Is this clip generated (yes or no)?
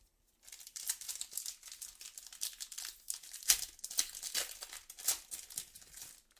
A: no